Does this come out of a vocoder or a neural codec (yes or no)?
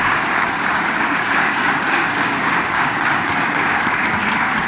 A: yes